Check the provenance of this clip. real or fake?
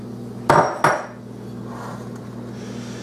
real